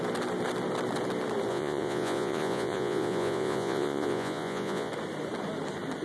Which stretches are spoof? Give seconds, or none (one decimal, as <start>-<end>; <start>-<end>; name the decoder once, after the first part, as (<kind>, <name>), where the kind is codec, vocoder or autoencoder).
1.5-4.9 (vocoder, Vocos)